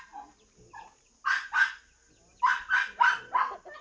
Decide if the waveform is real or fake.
real